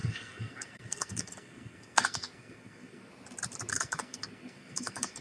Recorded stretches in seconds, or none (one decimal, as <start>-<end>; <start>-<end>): 3.1-3.7